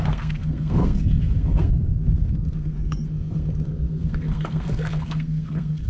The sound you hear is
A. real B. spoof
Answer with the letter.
B